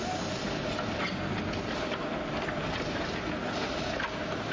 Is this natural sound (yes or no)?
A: yes